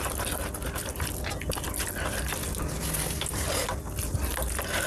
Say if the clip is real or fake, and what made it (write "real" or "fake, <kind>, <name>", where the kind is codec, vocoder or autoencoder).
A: real